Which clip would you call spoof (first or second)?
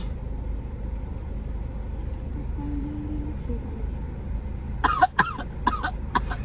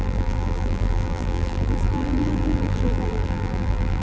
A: second